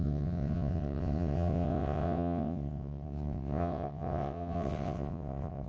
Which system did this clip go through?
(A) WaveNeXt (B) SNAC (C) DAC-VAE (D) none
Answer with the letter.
A